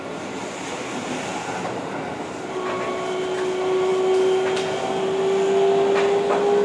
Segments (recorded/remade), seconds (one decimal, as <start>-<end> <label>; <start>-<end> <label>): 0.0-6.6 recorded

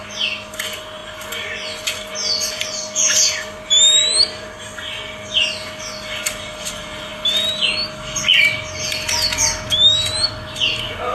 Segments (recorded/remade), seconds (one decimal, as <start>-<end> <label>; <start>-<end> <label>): 0.0-11.1 recorded

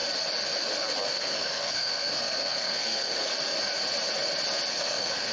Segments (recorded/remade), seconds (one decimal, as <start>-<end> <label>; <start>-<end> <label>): 0.0-1.1 recorded; 1.1-3.3 remade; 3.3-4.7 recorded; 4.7-5.3 remade